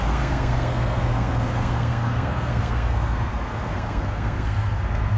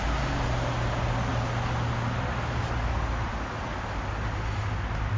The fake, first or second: first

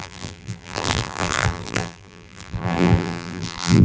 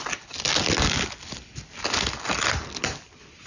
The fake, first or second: first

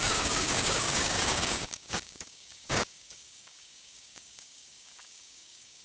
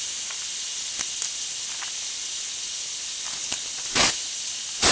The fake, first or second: first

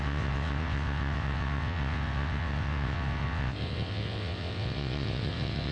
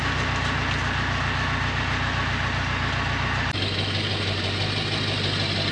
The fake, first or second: first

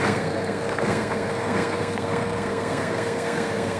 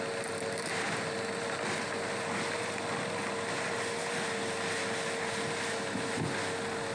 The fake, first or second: first